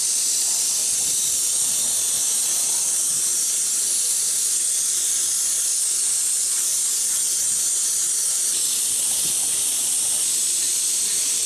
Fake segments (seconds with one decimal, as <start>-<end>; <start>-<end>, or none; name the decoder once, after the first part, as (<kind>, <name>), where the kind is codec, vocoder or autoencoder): 0.0-1.7 (vocoder, BigVGAN v2); 3.8-6.7; 8.8-11.5